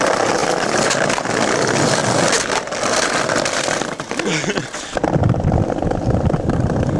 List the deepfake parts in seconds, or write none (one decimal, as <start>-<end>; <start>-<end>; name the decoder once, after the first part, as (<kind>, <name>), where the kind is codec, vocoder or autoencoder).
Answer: 0.4-1.1 (vocoder, BigVGAN v2)